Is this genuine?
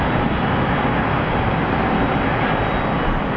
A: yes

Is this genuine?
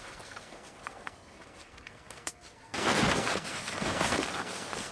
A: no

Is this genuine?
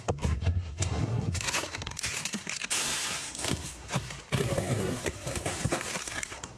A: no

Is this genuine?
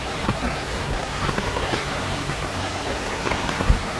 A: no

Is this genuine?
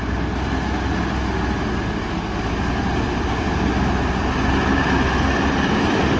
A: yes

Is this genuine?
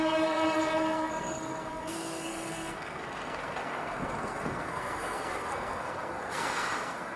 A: no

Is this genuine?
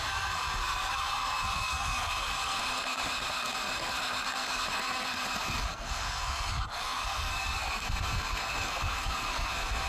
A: no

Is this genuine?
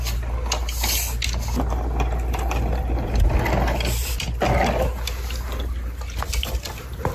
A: yes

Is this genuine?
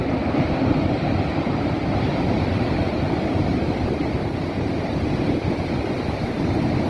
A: yes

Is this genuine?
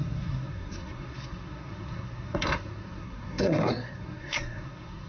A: no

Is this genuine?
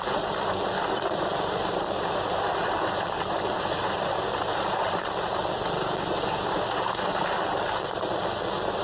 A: yes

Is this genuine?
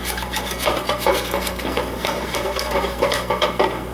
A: no